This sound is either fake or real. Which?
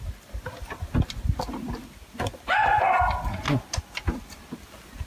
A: real